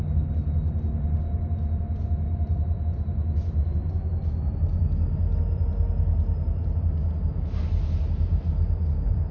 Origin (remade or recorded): recorded